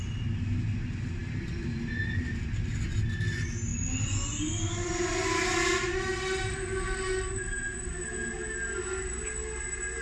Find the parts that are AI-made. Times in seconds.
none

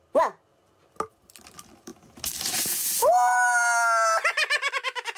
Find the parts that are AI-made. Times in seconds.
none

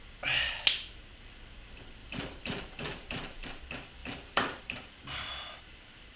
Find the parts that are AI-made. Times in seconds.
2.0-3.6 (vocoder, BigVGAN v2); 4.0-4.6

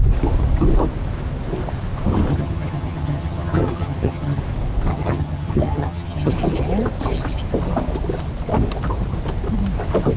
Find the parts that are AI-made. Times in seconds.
2.3-4.4 (vocoder, HiFi-GAN); 4.9-6.3